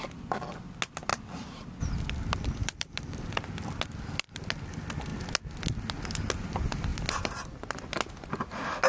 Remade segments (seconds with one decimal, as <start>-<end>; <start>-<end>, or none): 2.6-4.3; 6.9-7.8